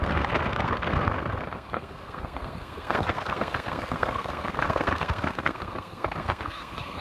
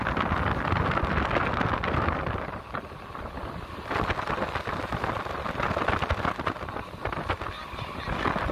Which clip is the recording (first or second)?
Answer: second